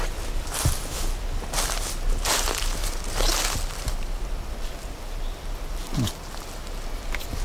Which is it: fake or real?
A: real